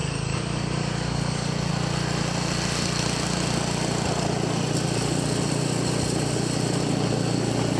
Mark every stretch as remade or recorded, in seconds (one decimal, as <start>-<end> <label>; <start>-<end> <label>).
0.0-1.7 remade; 1.7-7.8 recorded